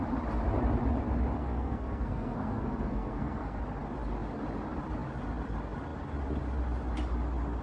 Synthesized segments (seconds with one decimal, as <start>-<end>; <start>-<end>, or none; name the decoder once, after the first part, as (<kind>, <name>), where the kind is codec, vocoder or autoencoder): 1.4-3.6 (codec, SNAC)